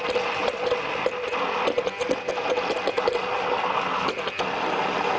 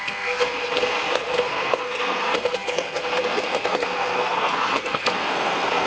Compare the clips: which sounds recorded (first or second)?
first